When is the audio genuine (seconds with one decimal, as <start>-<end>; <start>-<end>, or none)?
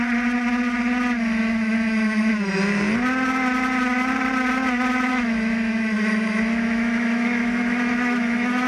0.0-1.4; 2.3-5.1